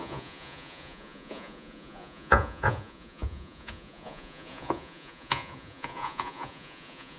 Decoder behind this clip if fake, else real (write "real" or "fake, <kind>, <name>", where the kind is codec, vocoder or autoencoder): fake, vocoder, Vocos